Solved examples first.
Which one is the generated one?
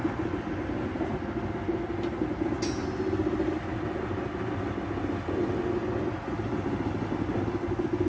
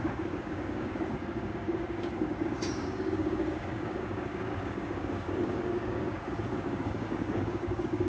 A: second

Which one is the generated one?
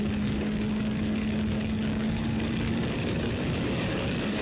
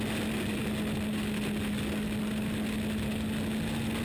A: first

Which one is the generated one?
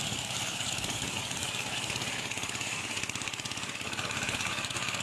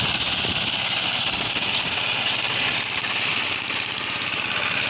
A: first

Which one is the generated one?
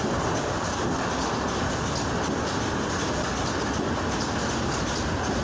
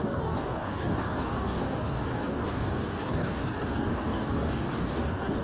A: second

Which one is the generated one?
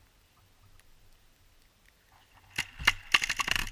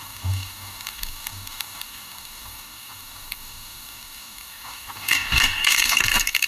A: second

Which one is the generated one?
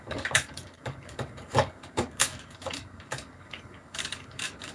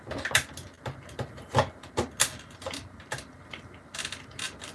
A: first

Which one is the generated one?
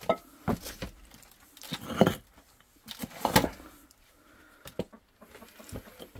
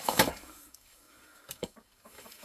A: second